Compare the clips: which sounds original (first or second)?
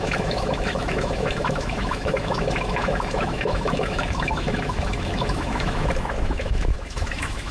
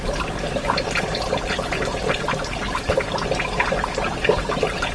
second